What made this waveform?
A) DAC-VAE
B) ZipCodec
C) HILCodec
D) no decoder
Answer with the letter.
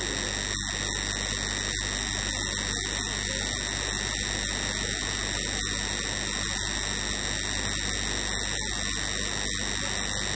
D